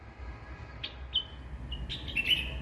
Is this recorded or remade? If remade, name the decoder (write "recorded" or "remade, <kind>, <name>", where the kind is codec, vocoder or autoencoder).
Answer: recorded